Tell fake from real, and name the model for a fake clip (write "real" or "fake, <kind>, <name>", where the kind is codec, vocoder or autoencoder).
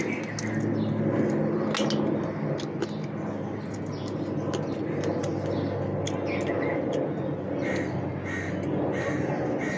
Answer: real